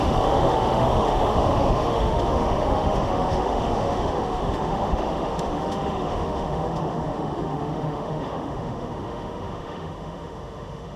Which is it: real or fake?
fake